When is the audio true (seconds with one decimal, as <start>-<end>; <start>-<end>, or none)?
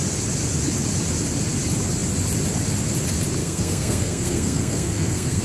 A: 0.0-3.4